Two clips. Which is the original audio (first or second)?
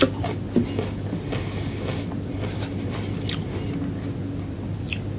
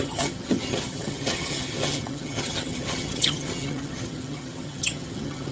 first